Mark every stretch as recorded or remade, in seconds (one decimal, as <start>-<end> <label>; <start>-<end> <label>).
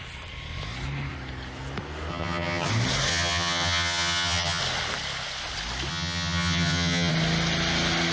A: 0.0-2.1 recorded; 2.1-2.7 remade; 2.7-3.1 recorded; 3.1-4.6 remade; 4.6-5.9 recorded; 5.9-7.1 remade; 7.1-8.1 recorded